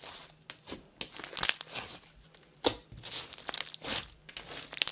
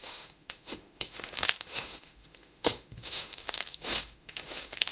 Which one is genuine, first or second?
first